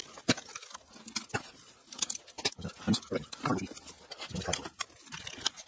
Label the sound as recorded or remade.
recorded